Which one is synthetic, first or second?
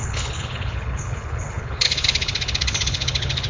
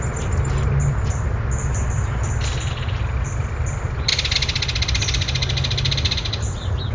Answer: first